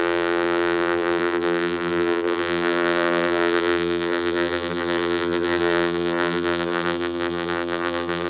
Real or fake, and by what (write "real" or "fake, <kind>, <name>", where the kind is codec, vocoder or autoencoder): fake, vocoder, BigVGAN v2